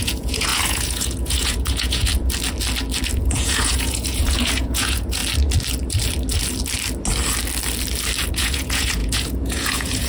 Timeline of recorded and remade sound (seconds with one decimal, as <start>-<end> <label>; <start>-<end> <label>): 0.0-2.1 remade; 2.1-3.2 recorded; 3.2-5.2 remade; 5.2-8.3 recorded; 8.3-10.1 remade